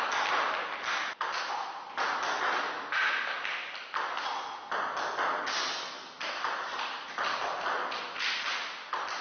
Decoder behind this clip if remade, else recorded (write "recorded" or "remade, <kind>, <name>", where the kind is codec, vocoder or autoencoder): recorded